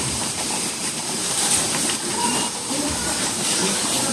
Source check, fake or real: fake